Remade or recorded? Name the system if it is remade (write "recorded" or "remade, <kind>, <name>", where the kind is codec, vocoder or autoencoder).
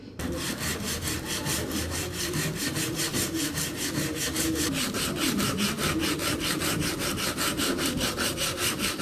remade, vocoder, BigVGAN v2